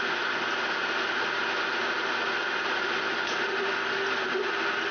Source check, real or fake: real